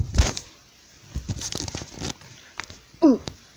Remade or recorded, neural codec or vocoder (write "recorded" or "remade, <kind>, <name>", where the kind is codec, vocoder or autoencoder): remade, vocoder, BigVGAN v2